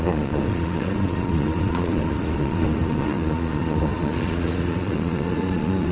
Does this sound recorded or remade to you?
remade